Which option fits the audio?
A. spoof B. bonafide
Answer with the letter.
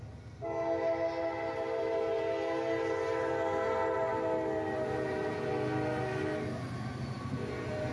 B